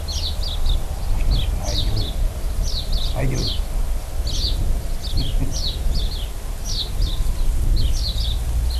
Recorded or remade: recorded